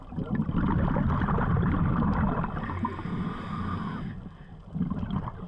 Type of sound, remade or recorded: recorded